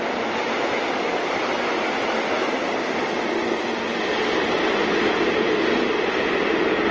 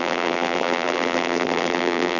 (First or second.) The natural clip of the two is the first